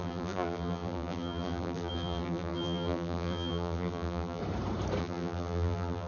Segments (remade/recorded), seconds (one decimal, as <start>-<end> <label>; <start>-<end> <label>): 0.0-4.4 remade; 4.4-5.0 recorded; 5.0-6.1 remade